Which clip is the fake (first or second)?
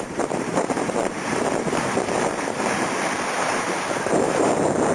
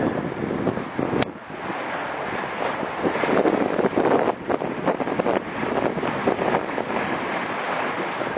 first